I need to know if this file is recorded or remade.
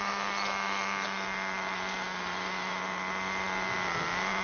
recorded